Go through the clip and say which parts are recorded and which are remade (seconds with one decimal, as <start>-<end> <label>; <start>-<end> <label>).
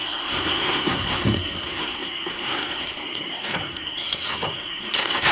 0.0-5.3 remade